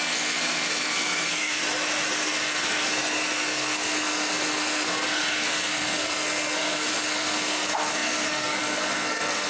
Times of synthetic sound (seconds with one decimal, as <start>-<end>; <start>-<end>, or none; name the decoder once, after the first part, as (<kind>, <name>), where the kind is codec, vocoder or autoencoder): 0.0-1.6 (codec, SNAC); 2.1-9.5